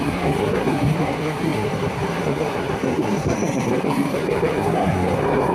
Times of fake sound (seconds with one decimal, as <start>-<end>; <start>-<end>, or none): 0.0-5.5